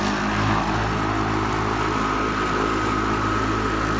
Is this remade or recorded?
recorded